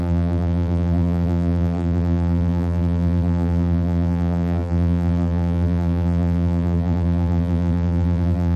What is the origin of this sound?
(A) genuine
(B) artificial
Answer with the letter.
B